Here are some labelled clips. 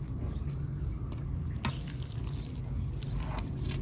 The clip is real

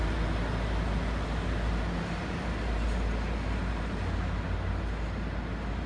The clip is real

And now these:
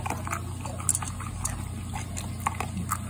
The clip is real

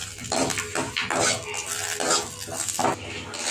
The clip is real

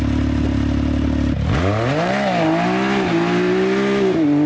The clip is real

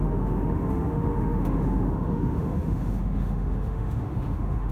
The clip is fake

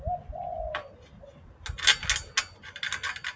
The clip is real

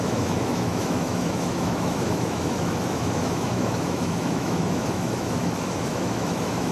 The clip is fake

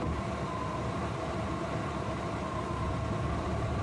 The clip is real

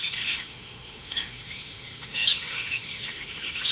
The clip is fake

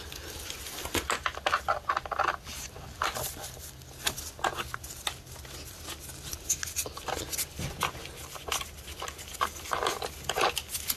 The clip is real